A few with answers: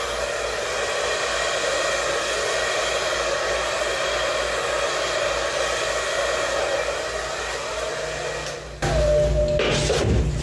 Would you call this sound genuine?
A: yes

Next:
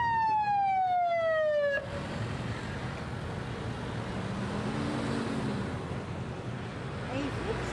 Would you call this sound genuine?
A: yes